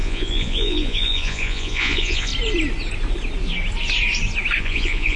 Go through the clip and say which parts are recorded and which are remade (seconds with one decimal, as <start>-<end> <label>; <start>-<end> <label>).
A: 0.0-2.3 remade; 2.3-4.6 recorded; 4.6-5.2 remade